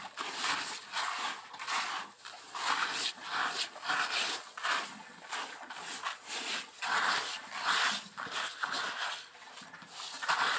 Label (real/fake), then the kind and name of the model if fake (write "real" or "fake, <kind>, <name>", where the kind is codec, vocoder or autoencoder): real